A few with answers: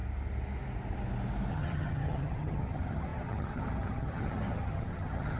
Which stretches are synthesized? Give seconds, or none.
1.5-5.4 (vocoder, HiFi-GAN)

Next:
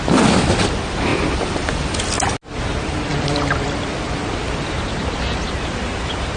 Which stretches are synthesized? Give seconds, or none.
none

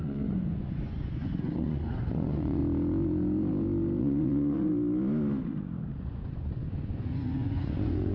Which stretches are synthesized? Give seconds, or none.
0.0-2.6 (vocoder, Vocos); 4.0-4.7; 5.9-8.1